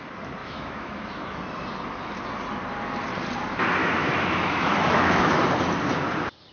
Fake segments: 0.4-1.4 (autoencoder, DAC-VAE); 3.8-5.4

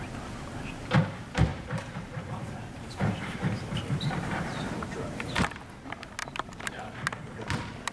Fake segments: 1.5-5.6 (vocoder, BigVGAN v2); 6.2-6.8